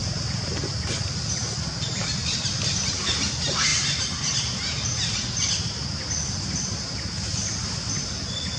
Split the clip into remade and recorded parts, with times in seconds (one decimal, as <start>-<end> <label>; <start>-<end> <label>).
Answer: 0.0-8.6 recorded